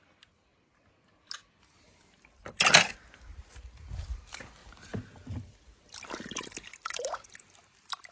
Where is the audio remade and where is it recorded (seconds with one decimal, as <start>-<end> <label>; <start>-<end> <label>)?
0.0-8.1 recorded